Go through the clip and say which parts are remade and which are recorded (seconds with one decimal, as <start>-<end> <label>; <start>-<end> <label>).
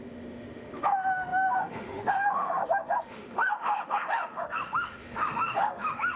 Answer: 0.0-6.2 remade